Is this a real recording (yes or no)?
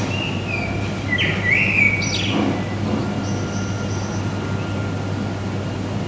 yes